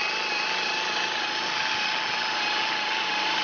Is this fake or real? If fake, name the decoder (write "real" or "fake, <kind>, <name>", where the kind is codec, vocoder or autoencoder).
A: real